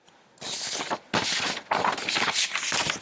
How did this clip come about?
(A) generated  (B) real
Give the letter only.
B